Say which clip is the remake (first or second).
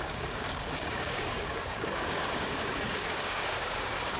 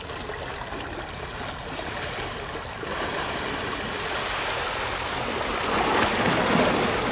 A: first